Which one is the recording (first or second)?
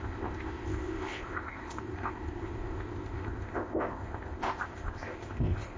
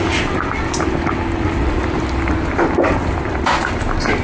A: second